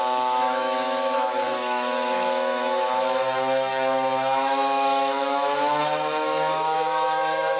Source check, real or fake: fake